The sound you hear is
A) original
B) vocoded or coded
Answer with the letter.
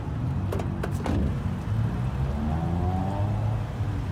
A